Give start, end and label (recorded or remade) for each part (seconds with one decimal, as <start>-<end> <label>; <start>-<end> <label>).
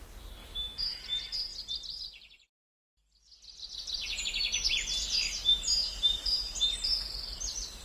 0.0-0.4 recorded; 0.4-1.0 remade; 1.0-7.8 recorded